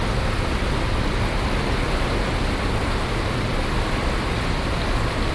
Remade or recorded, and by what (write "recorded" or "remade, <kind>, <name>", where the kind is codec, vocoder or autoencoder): recorded